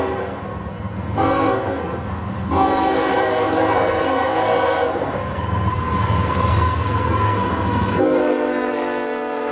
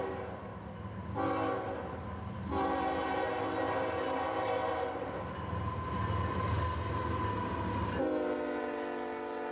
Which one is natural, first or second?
second